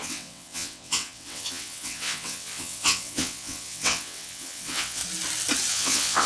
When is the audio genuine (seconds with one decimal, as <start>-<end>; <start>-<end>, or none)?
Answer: 5.0-5.7